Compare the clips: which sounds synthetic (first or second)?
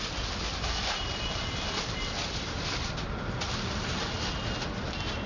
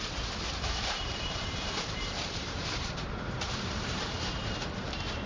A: second